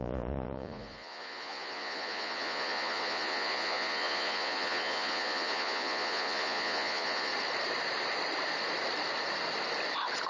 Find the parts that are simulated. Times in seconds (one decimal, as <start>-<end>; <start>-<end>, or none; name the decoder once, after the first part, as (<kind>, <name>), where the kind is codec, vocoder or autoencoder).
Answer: 0.0-7.3 (vocoder, Vocos)